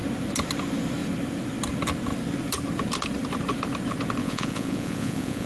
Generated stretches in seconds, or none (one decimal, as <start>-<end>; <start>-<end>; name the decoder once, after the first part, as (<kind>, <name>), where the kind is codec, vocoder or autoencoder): 4.2-5.5 (vocoder, Vocos)